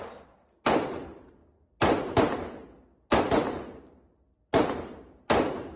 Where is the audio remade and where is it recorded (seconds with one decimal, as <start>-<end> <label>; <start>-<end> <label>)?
0.0-5.8 recorded